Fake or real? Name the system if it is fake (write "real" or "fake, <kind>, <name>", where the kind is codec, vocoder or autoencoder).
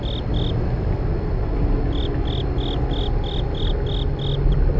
real